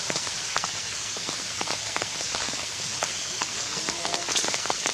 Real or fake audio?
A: fake